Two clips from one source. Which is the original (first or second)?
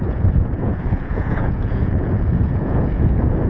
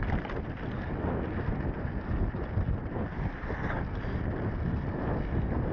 second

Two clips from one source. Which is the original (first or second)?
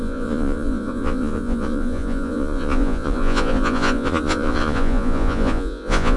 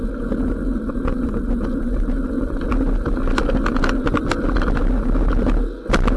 second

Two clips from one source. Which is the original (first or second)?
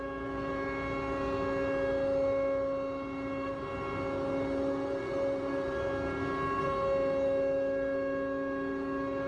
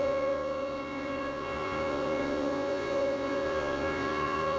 first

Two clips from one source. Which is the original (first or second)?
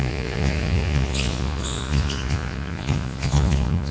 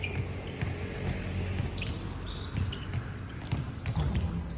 second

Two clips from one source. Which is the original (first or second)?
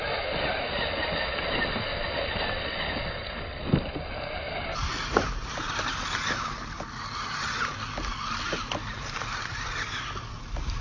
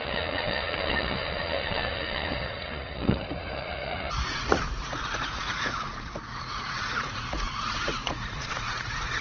first